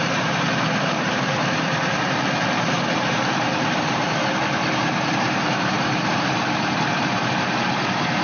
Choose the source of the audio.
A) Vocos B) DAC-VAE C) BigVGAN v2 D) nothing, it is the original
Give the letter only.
C